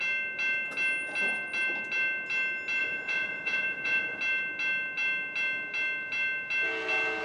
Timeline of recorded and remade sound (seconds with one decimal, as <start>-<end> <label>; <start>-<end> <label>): 0.0-2.8 recorded; 2.8-4.2 remade; 4.2-7.2 recorded